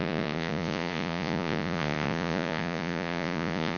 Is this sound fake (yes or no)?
yes